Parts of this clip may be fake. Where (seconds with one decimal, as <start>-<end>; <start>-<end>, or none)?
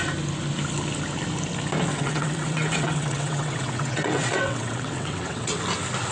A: 1.9-5.6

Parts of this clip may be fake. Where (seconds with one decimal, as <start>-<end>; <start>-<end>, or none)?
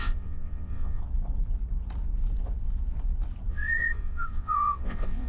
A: 0.0-1.0; 3.5-5.3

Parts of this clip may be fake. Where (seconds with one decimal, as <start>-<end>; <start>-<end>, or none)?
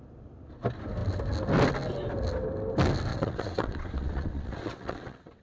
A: 3.1-5.4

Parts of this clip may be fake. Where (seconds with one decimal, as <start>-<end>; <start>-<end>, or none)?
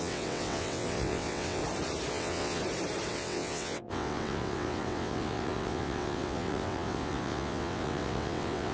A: 0.0-1.6; 2.1-2.6; 3.1-8.7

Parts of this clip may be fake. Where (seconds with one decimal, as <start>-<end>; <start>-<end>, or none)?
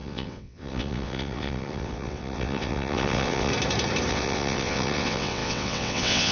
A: 0.0-3.5; 4.1-6.3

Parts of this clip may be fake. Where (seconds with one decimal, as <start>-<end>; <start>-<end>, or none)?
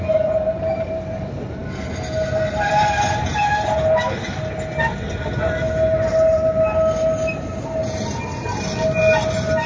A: none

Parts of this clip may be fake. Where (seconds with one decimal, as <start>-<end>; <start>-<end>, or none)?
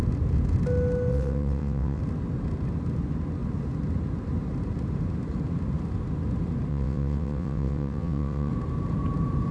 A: 1.1-2.0; 6.7-8.5